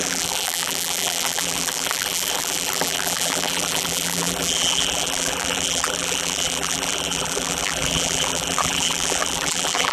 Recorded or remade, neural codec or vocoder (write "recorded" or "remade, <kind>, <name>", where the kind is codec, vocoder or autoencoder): remade, vocoder, BigVGAN v2